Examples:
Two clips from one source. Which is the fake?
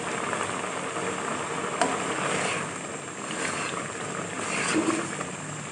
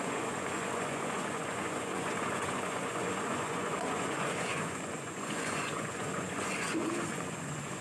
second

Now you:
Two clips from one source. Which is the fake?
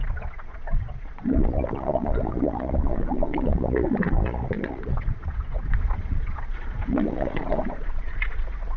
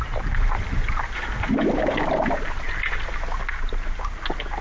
first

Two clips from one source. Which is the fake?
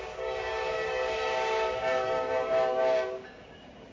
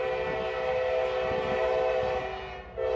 first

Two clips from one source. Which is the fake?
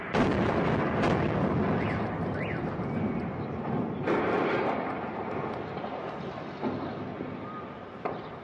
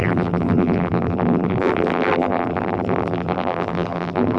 second